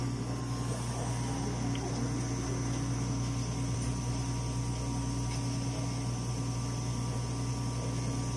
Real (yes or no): yes